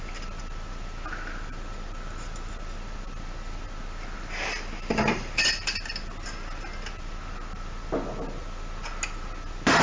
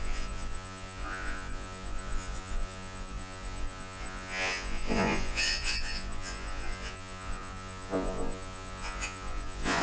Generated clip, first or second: second